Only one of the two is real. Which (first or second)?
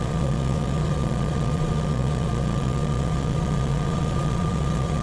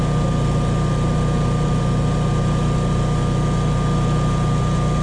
second